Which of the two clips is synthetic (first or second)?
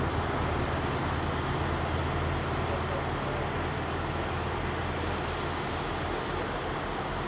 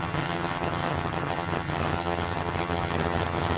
second